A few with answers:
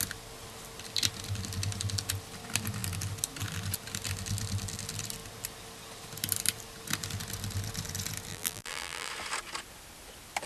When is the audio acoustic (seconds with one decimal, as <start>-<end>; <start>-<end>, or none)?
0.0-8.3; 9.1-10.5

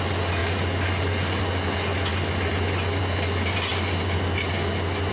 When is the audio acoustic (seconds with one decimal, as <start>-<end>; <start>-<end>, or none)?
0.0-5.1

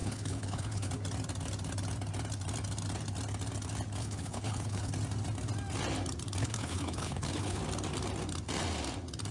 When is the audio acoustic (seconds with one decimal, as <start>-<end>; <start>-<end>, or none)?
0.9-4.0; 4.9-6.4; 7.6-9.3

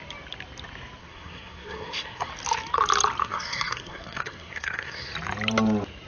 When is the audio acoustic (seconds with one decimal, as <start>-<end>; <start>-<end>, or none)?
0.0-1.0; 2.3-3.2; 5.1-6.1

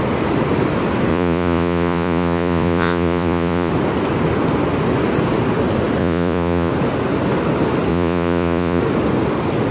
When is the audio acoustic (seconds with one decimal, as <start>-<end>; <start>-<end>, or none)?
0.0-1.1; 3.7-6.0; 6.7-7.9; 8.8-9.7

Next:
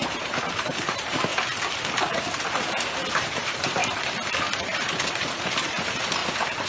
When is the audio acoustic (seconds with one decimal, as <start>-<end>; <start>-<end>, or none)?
1.3-3.1; 3.8-4.4